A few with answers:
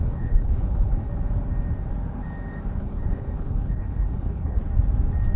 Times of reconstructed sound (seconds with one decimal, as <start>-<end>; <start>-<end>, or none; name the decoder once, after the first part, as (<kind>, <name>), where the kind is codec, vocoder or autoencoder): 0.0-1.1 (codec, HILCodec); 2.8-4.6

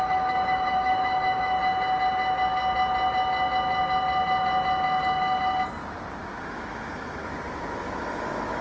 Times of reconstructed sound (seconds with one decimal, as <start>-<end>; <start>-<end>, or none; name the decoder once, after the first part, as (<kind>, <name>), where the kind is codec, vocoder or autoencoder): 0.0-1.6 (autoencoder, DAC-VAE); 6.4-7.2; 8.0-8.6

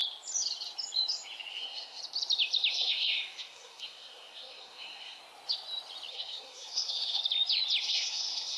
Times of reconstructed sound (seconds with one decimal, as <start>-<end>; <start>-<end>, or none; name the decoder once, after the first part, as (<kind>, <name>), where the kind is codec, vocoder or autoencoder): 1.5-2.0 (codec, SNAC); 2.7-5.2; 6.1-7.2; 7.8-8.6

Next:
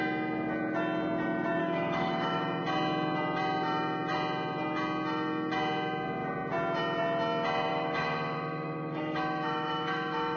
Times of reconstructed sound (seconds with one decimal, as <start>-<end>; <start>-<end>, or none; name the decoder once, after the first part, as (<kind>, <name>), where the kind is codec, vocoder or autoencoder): 1.6-2.4 (autoencoder, DAC-VAE); 7.7-10.4

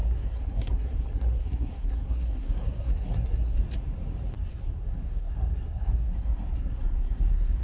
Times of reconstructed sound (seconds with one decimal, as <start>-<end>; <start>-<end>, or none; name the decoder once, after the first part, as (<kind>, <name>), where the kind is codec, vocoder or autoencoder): 0.0-3.6 (codec, SNAC); 4.5-7.6

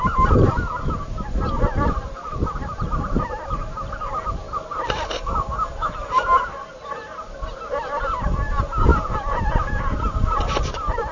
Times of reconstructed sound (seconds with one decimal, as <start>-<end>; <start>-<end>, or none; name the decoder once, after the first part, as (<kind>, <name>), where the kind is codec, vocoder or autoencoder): 8.9-10.0 (vocoder, Vocos)

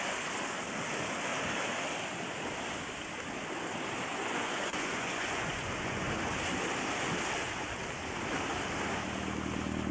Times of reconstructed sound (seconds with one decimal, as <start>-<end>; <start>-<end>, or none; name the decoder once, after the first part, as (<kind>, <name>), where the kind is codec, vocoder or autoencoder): 4.1-6.1 (vocoder, Vocos)